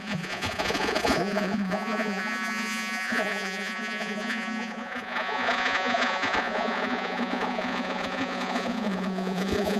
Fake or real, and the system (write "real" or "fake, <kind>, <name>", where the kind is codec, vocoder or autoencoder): fake, vocoder, Vocos